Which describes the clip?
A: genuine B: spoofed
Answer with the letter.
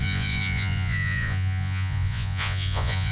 B